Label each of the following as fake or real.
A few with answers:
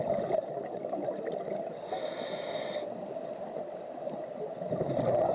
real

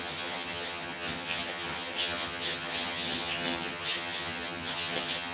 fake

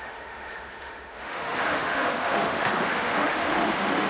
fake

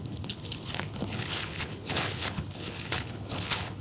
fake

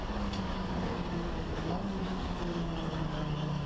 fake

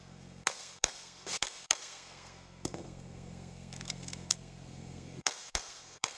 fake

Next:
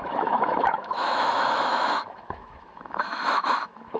fake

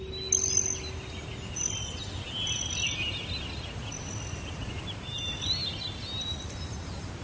real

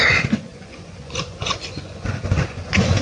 fake